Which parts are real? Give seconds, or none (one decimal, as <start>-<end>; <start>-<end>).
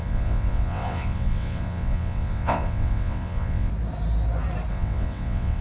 3.7-4.7